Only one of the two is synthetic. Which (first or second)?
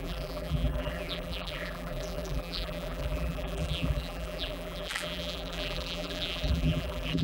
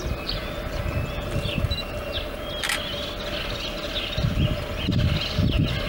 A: first